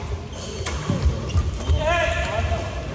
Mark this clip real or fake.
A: real